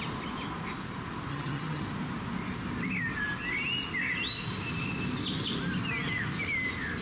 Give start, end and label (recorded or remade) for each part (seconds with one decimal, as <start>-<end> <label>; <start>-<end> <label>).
0.0-1.3 recorded; 1.3-1.8 remade; 1.8-7.0 recorded